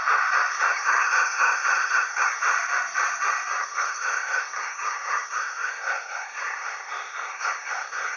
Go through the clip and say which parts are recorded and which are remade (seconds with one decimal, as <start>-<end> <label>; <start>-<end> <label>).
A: 0.0-0.5 recorded; 0.5-2.4 remade; 2.4-3.6 recorded; 3.6-8.2 remade